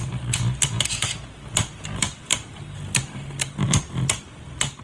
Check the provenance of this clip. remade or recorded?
recorded